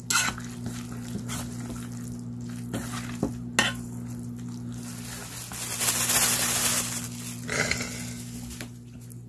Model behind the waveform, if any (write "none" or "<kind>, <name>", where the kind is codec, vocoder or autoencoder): none